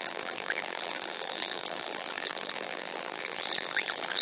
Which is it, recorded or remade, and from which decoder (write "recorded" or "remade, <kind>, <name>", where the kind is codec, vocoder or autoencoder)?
remade, vocoder, BigVGAN v2